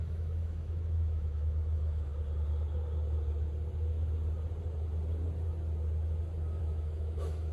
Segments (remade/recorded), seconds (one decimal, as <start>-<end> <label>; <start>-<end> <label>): 0.0-2.1 remade; 2.1-6.6 recorded; 6.6-7.5 remade